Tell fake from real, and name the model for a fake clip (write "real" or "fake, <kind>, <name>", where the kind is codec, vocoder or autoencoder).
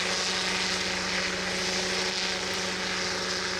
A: real